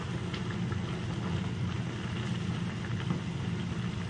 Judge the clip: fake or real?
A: real